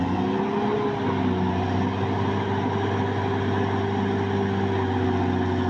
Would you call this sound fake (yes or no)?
no